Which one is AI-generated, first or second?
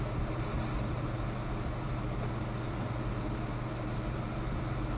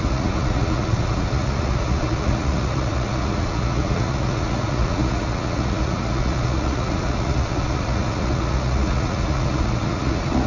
second